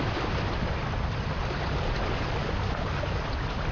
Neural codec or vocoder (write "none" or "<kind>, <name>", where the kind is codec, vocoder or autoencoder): none